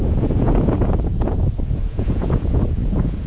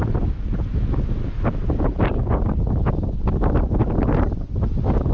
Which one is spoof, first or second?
first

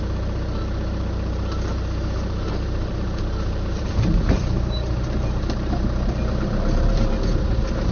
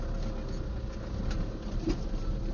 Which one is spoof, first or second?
first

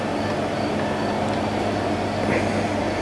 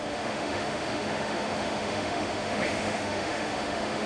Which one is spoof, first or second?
second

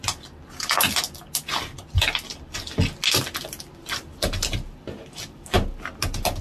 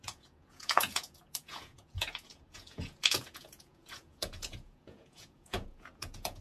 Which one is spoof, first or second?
second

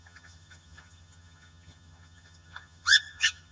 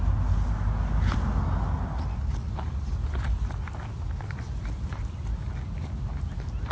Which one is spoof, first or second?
first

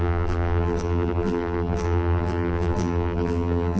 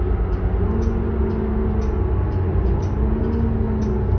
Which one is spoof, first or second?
first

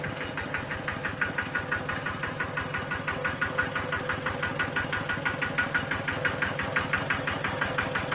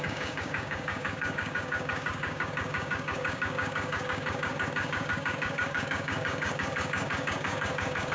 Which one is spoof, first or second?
second